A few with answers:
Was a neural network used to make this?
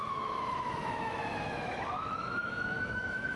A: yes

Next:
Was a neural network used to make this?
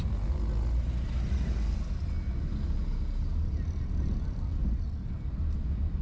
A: no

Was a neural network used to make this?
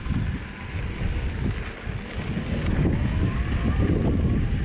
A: no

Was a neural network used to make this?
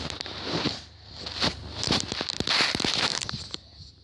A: no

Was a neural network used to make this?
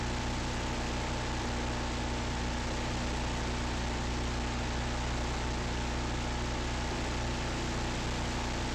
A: no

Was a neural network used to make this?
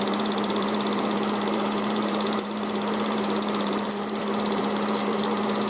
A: yes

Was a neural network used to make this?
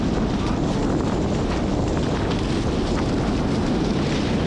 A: no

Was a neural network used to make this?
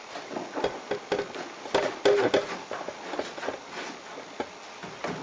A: no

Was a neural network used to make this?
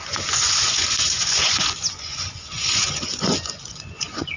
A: yes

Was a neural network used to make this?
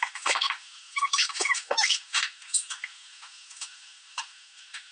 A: yes